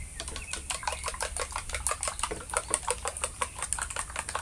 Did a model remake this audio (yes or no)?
no